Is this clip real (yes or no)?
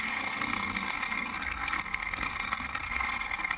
no